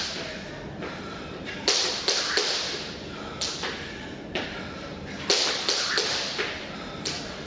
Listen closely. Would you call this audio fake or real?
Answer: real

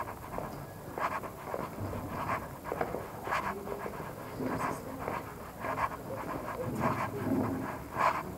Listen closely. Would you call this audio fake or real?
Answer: real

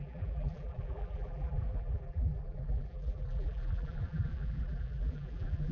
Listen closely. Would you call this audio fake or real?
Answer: fake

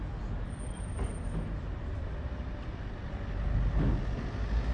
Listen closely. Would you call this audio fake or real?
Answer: real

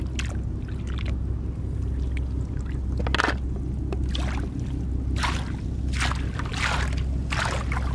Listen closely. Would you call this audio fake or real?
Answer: real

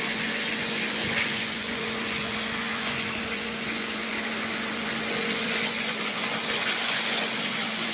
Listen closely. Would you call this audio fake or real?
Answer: fake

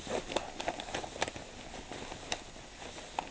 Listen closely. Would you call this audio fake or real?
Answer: real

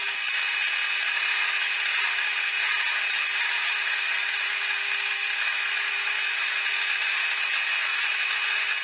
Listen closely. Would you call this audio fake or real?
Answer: real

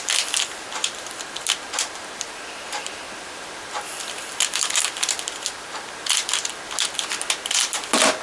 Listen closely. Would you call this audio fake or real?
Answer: real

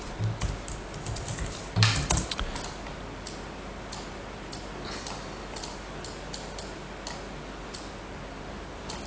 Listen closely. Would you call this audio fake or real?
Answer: real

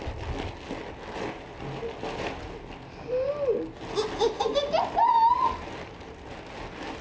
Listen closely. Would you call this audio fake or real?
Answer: real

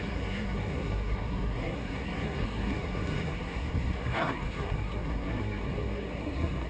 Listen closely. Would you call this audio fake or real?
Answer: fake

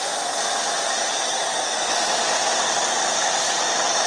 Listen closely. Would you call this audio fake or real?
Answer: real